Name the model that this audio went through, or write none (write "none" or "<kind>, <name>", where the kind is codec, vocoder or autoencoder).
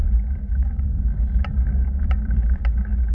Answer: none